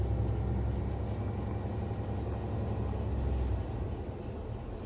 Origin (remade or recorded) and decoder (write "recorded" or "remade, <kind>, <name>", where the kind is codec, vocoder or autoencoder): recorded